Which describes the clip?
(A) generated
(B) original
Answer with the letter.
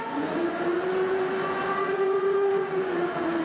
A